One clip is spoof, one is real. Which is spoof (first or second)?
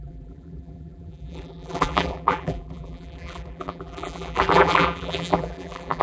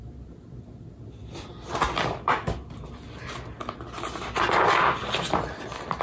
first